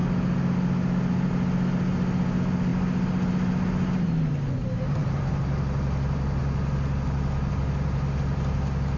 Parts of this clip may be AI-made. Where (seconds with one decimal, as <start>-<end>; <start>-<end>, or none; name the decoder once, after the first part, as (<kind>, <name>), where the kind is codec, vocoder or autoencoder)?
none